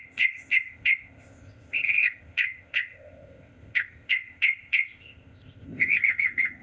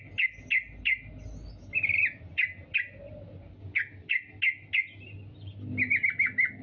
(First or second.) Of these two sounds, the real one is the second